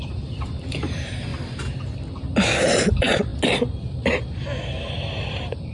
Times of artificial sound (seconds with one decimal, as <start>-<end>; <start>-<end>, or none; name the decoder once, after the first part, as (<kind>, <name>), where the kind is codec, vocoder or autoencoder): 0.0-1.3 (vocoder, BigVGAN v2); 2.6-3.3; 4.6-5.7